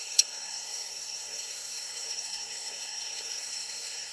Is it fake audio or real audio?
fake